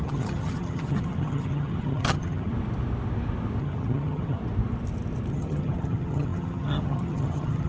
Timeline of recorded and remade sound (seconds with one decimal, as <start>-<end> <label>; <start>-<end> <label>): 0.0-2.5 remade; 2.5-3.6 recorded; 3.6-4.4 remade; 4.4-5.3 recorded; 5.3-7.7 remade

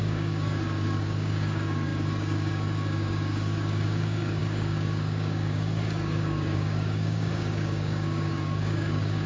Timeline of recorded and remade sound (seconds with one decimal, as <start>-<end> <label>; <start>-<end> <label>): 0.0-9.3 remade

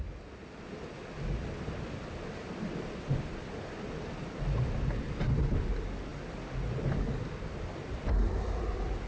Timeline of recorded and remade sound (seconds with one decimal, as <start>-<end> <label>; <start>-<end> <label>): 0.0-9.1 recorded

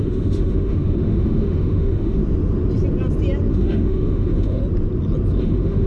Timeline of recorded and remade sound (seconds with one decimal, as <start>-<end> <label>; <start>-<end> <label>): 0.0-2.2 remade; 2.2-3.5 recorded; 3.5-4.6 remade; 4.6-5.4 recorded; 5.4-5.9 remade

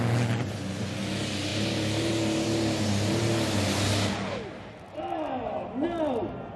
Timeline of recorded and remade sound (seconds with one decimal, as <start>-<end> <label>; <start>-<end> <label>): 0.0-6.6 recorded